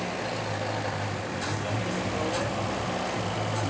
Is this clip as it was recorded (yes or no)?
yes